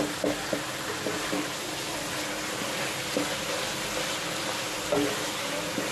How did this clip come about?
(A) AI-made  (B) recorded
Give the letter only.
B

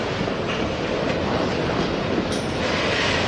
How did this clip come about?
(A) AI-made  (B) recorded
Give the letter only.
B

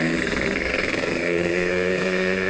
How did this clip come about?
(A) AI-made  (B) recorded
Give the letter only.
A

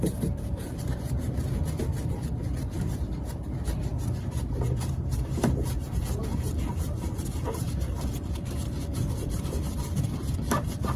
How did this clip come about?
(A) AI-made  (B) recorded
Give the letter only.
A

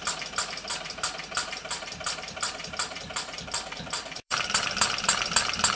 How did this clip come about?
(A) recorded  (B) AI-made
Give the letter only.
B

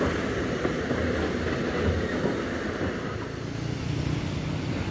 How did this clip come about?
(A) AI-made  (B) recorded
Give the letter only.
B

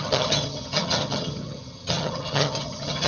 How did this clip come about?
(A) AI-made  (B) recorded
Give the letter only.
A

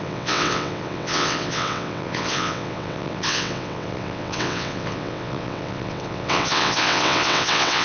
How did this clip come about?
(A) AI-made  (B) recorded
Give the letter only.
A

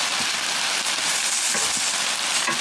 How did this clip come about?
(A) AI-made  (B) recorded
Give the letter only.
B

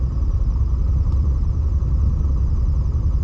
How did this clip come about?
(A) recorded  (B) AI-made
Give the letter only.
B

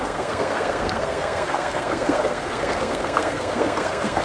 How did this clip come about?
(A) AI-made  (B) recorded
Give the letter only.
A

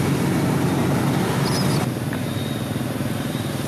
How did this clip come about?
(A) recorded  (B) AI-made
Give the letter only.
A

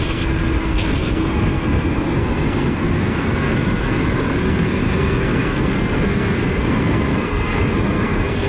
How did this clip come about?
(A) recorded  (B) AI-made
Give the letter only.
B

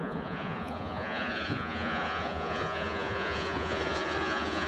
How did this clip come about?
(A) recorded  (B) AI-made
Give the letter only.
B